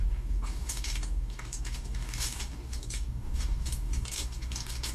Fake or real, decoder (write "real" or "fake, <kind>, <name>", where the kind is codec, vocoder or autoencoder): fake, codec, DAC